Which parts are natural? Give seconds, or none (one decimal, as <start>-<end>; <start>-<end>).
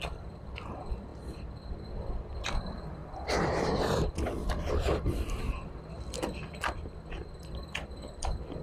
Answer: 1.1-2.4